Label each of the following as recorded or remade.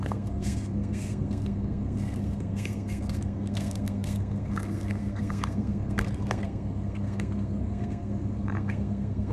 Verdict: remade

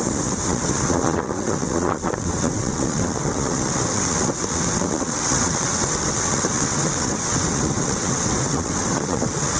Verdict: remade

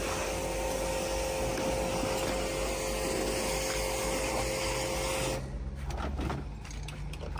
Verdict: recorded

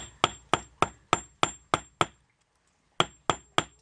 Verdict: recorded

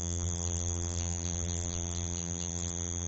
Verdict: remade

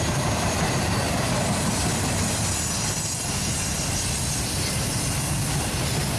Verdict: recorded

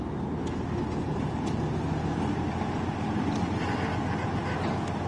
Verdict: recorded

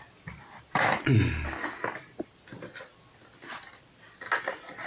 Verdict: recorded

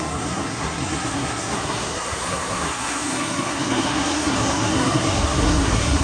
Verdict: remade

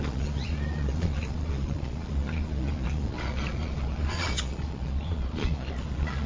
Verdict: remade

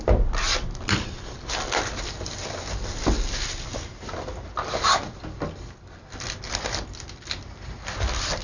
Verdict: recorded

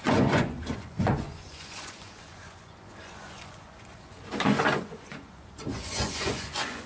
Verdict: remade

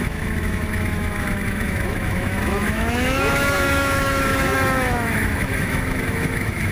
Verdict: remade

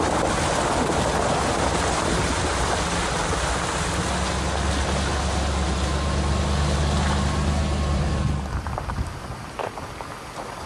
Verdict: recorded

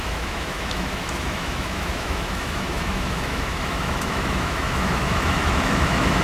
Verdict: remade